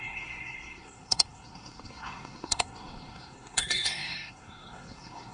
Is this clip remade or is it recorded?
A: remade